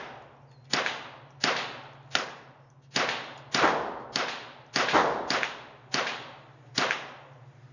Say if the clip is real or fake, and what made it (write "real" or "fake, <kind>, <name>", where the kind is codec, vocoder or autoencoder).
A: real